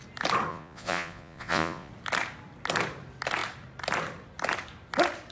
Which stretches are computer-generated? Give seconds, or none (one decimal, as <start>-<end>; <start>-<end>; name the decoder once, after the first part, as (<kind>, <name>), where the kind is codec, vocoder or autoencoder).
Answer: 0.5-1.9 (vocoder, Vocos)